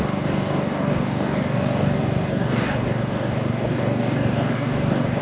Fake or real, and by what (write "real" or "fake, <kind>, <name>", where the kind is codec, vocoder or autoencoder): fake, codec, DAC